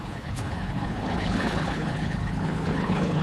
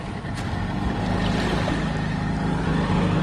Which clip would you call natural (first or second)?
second